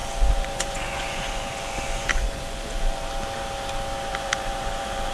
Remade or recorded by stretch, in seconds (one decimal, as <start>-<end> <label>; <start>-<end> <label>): 0.0-3.1 remade; 3.1-4.1 recorded; 4.1-5.1 remade